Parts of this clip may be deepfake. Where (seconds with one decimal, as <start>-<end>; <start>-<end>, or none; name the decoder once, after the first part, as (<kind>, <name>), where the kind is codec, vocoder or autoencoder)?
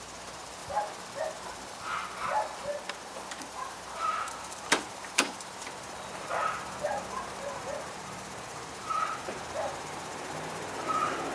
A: 0.0-0.6 (vocoder, BigVGAN v2); 2.9-11.3